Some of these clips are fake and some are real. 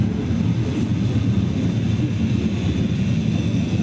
real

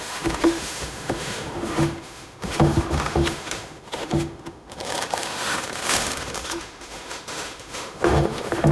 fake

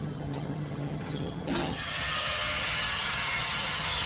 fake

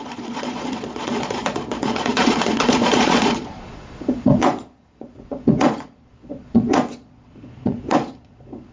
fake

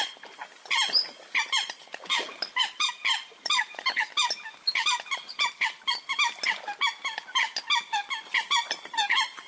real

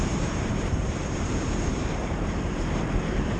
fake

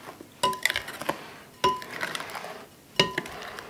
real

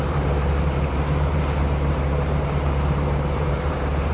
fake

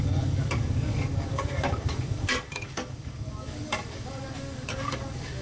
fake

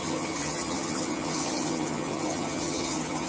fake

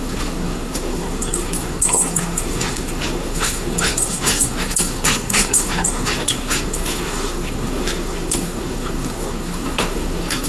fake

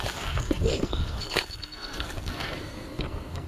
fake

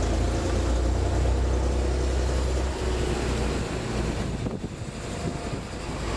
real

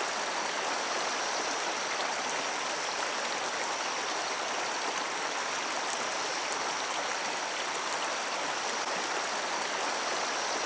real